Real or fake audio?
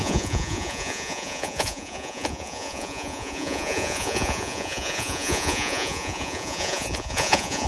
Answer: fake